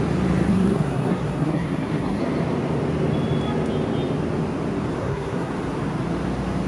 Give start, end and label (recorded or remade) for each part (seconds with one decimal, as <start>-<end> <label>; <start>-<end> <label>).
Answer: 0.0-0.5 recorded; 0.5-2.2 remade; 2.2-5.0 recorded; 5.0-5.5 remade; 5.5-6.7 recorded